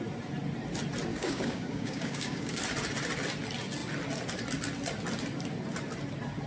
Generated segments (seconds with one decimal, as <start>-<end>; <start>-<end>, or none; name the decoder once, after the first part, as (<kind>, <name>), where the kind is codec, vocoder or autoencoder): 1.1-2.6 (codec, DAC)